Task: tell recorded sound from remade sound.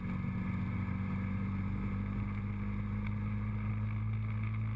recorded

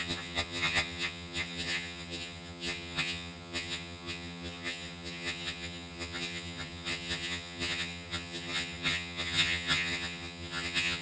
remade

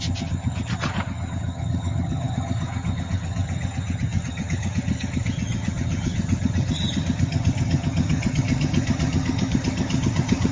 remade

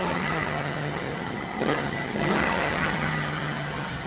remade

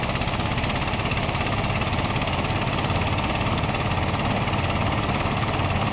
recorded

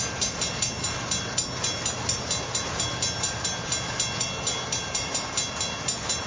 recorded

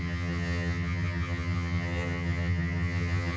remade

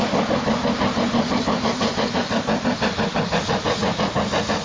recorded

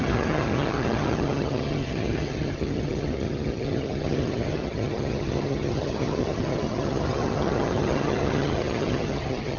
remade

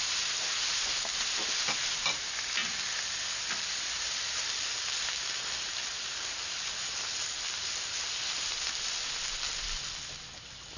recorded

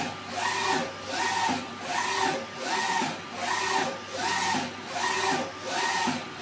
recorded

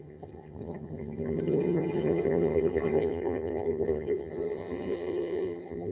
remade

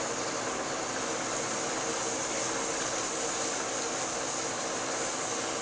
recorded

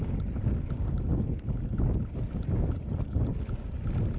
recorded